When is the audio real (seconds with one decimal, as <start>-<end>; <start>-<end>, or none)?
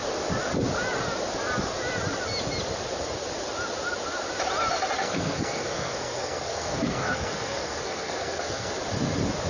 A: 0.0-5.0; 8.7-9.5